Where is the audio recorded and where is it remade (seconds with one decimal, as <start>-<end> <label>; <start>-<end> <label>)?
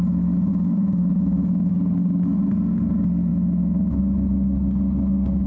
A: 0.0-0.5 recorded; 0.5-1.7 remade; 1.7-3.3 recorded; 3.3-4.0 remade; 4.0-5.5 recorded